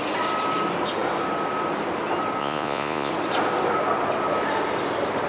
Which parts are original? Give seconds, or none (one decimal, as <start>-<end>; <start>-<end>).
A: 0.0-2.4; 3.1-5.3